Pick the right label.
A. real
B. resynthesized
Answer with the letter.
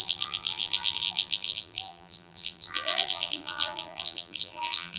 B